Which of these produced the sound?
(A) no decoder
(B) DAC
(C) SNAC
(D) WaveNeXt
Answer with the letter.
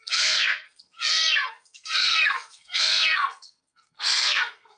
C